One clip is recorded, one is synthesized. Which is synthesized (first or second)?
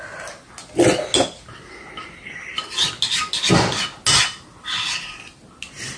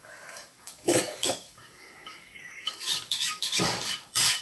second